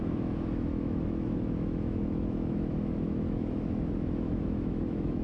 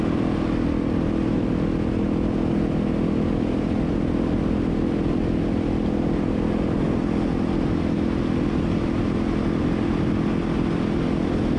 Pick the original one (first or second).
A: second